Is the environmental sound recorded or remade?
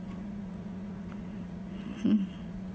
remade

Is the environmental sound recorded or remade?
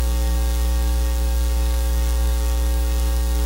remade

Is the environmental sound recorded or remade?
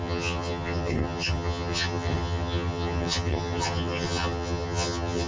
remade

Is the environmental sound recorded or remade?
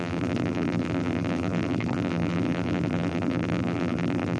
remade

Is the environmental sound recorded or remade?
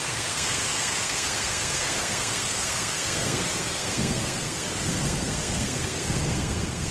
remade